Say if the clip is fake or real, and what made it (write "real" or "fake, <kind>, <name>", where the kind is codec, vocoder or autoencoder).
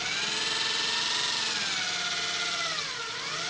real